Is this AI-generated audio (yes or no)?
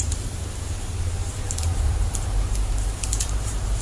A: yes